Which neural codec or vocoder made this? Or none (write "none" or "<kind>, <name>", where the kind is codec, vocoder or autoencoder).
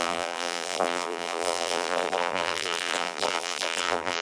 vocoder, BigVGAN v2